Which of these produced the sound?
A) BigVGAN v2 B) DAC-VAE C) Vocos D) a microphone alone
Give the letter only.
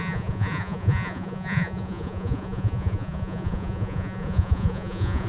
C